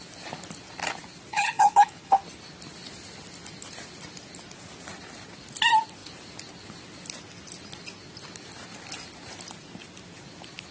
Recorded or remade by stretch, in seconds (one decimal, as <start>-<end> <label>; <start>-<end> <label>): 0.0-1.3 recorded; 1.3-2.2 remade; 2.2-10.7 recorded